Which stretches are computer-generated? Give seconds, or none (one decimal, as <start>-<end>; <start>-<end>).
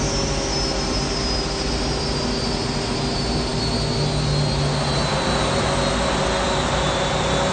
none